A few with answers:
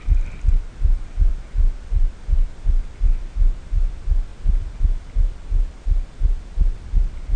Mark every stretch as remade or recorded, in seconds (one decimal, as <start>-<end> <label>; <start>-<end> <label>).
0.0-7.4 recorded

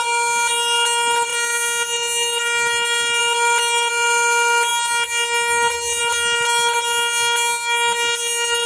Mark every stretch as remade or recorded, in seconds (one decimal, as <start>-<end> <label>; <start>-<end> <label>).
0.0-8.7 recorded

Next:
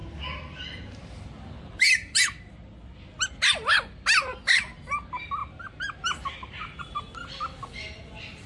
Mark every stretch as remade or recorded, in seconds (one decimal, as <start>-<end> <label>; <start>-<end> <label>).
0.0-8.5 recorded

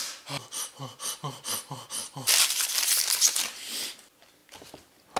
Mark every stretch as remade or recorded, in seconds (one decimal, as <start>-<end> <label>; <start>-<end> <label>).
0.0-5.2 recorded

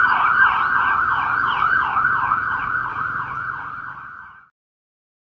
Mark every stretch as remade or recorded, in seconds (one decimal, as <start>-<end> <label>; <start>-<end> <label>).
0.0-1.3 recorded; 1.3-3.9 remade; 3.9-5.4 recorded